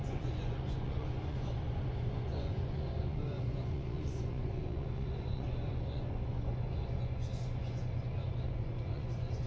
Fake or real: fake